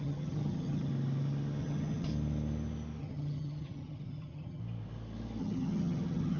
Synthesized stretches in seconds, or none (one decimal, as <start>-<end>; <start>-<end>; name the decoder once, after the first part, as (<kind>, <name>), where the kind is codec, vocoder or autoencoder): 0.0-0.9 (vocoder, HiFi-GAN); 1.6-2.1; 3.0-4.6; 5.4-6.4